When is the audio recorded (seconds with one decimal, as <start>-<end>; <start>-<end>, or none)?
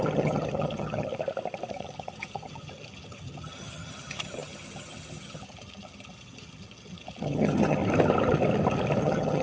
1.1-1.7; 7.8-9.0